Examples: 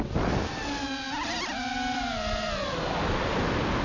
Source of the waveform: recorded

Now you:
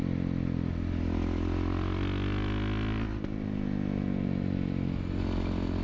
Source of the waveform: recorded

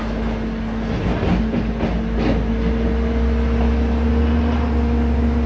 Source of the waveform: recorded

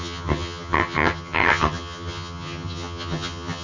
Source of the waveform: remade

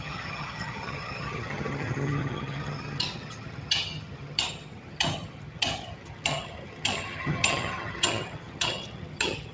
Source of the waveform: remade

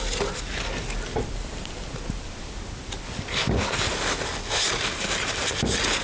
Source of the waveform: recorded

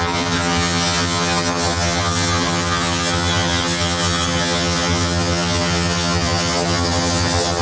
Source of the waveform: remade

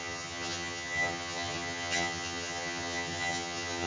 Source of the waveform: remade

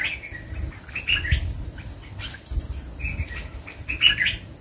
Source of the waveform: recorded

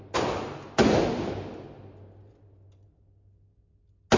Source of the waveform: recorded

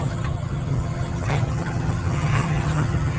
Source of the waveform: remade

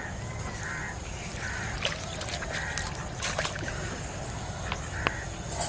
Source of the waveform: recorded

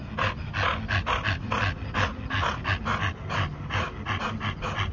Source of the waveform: recorded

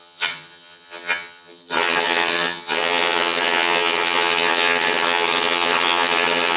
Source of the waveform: remade